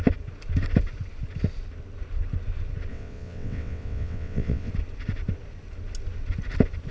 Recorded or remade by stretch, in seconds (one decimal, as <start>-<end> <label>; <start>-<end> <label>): 0.0-2.9 recorded; 2.9-4.7 remade; 4.7-6.9 recorded